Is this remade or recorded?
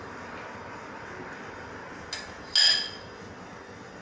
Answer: recorded